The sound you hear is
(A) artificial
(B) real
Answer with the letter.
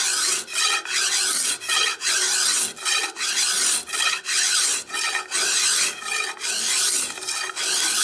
B